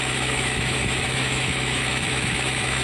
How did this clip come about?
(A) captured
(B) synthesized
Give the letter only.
B